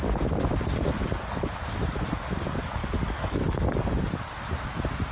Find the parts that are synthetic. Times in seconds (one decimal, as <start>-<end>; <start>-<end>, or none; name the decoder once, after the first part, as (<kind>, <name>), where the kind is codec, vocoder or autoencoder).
1.0-1.5 (codec, DAC); 2.8-3.8